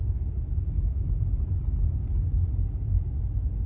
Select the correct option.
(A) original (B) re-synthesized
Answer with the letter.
A